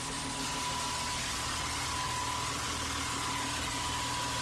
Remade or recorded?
recorded